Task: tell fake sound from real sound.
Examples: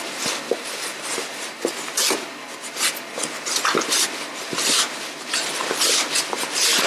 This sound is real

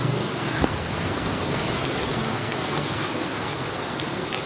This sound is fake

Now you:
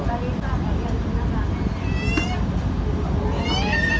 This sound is real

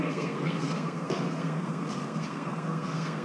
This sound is fake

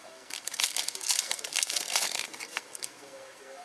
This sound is fake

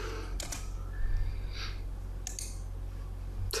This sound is real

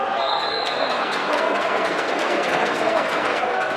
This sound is fake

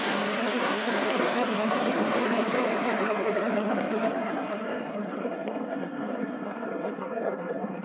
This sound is fake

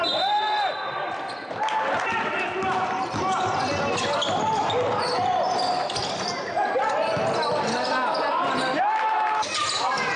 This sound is real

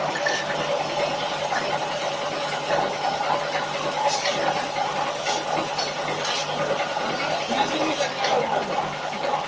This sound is real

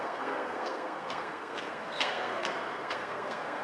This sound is fake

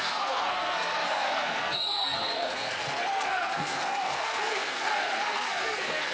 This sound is fake